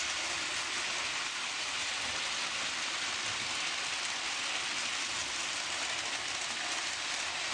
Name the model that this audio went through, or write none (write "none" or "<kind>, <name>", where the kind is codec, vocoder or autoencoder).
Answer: none